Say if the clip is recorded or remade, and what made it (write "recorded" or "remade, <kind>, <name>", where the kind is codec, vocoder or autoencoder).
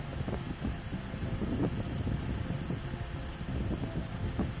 recorded